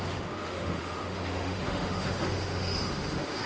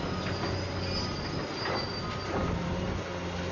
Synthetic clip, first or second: first